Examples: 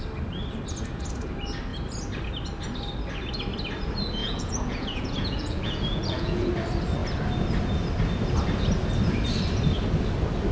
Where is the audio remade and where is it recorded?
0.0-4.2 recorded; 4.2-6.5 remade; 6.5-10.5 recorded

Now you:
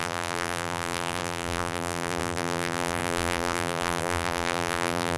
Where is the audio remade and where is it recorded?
0.0-5.2 remade

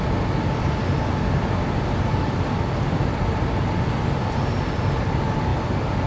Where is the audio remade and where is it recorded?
0.0-6.1 recorded

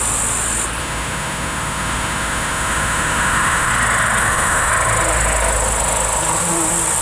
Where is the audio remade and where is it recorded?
0.0-0.8 recorded; 0.8-3.7 remade; 3.7-4.2 recorded; 4.2-4.7 remade; 4.7-7.0 recorded

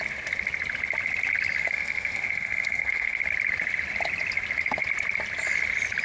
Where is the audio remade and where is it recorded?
0.0-1.6 recorded; 1.6-3.2 remade; 3.2-6.0 recorded

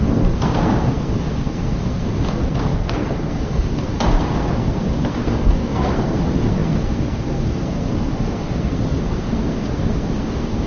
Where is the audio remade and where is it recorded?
0.0-10.7 remade

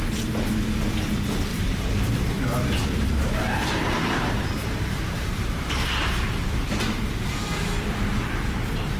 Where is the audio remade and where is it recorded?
0.0-1.5 recorded; 1.5-2.3 remade; 2.3-2.8 recorded; 2.8-7.6 remade; 7.6-9.0 recorded